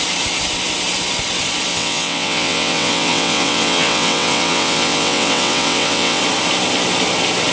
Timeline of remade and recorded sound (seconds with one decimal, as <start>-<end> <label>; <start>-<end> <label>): 0.0-1.7 recorded; 1.7-6.2 remade; 6.2-7.5 recorded